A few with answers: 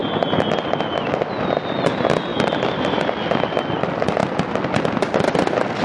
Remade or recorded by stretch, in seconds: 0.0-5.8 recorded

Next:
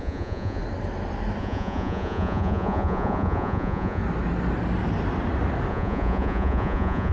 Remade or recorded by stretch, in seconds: 0.0-0.6 remade; 0.6-1.4 recorded; 1.4-4.0 remade; 4.0-5.7 recorded; 5.7-7.1 remade

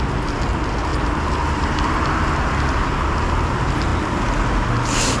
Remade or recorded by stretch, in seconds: 0.0-5.2 recorded

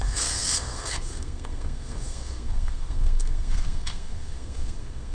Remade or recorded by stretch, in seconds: 0.0-5.1 remade

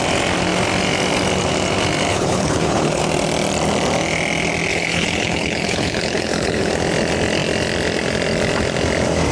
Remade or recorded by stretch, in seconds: 0.0-2.1 recorded; 2.1-3.0 remade; 3.0-4.7 recorded; 4.7-6.7 remade; 6.7-9.3 recorded

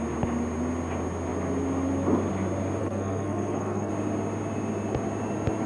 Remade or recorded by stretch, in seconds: 0.0-2.8 recorded; 2.8-3.9 remade; 3.9-5.7 recorded